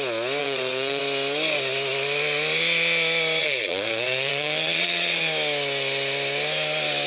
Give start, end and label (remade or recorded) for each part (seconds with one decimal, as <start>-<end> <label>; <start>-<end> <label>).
0.0-0.4 recorded; 0.4-1.0 remade; 1.0-3.4 recorded; 3.4-5.2 remade; 5.2-7.1 recorded